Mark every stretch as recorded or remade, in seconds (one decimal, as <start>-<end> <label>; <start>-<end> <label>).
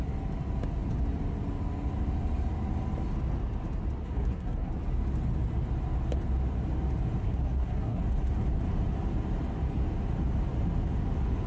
0.0-4.0 recorded; 4.0-4.7 remade; 4.7-7.2 recorded; 7.2-8.0 remade; 8.0-11.5 recorded